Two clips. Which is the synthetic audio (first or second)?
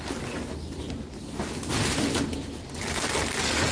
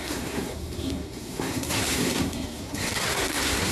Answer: second